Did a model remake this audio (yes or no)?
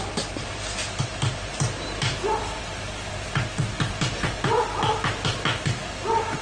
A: no